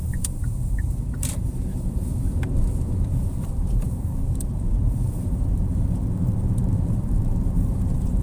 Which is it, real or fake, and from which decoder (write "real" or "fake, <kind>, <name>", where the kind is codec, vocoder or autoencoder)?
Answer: fake, vocoder, BigVGAN v2